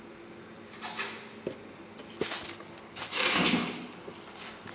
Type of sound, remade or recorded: recorded